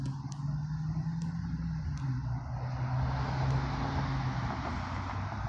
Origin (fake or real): real